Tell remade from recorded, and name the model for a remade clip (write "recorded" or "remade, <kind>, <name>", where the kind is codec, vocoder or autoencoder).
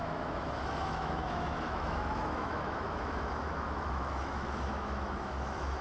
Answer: remade, autoencoder, DAC-VAE